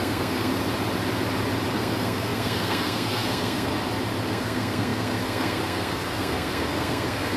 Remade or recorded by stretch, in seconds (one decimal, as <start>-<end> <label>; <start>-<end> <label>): 0.0-0.5 remade; 0.5-1.7 recorded; 1.7-3.7 remade; 3.7-4.2 recorded; 4.2-7.4 remade